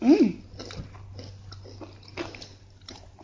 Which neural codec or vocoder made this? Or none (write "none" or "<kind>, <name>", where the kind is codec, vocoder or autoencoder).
none